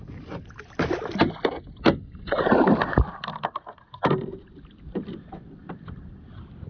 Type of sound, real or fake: fake